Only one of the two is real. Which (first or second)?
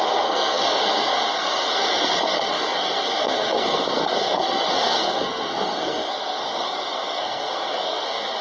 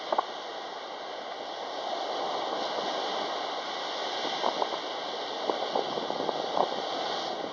second